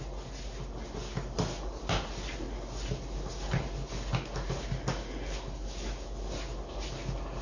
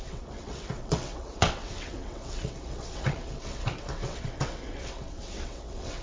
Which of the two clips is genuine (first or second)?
first